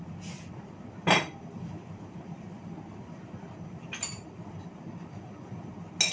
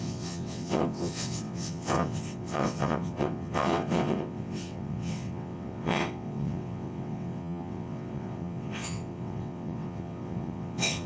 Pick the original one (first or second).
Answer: first